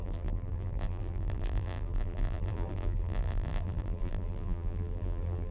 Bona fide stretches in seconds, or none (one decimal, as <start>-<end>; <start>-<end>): none